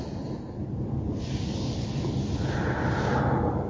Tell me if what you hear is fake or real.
real